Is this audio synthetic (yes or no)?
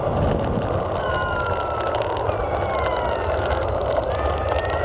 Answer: no